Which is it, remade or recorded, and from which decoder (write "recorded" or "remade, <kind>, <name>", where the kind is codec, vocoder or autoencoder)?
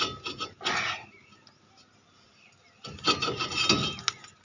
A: recorded